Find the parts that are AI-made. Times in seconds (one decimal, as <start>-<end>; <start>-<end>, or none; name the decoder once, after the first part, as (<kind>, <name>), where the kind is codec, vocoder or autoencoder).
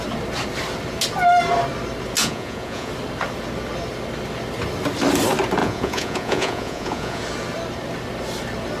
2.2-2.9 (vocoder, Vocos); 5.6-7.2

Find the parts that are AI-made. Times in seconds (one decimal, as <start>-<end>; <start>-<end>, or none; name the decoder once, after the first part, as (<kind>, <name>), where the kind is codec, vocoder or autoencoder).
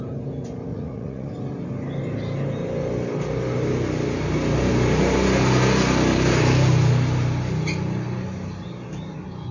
0.7-1.3 (vocoder, Vocos)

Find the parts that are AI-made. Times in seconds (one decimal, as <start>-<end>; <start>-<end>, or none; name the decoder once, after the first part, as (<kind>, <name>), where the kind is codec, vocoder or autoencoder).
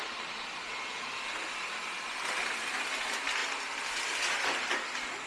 none